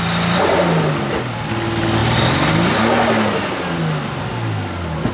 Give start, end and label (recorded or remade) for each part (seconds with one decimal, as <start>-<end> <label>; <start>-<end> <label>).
0.0-5.1 recorded